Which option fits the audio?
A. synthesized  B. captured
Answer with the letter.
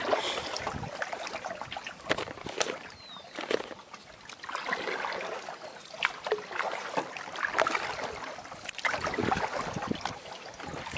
B